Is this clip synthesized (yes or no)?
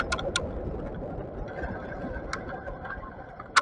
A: no